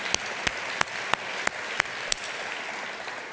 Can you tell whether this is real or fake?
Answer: real